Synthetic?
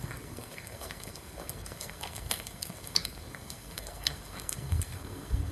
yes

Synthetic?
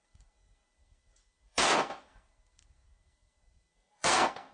yes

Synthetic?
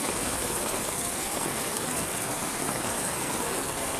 yes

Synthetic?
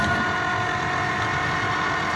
no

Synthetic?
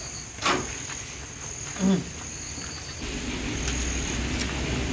no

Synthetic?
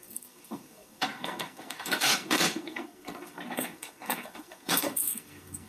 yes